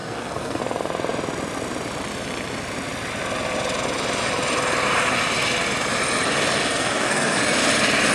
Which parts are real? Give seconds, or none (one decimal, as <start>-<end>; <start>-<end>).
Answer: 0.6-6.6; 7.4-8.1